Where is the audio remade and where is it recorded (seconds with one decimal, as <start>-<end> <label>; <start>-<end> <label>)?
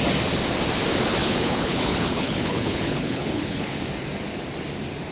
0.0-1.2 recorded; 1.2-3.8 remade; 3.8-5.1 recorded